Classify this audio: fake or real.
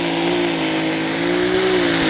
real